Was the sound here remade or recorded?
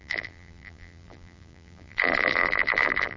remade